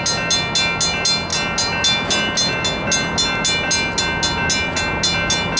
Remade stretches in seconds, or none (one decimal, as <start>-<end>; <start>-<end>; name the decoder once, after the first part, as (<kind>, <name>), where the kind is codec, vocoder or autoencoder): none